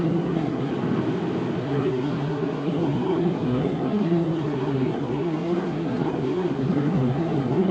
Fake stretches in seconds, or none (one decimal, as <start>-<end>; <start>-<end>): 0.0-0.7; 1.6-7.7